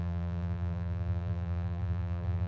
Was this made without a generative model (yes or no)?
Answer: no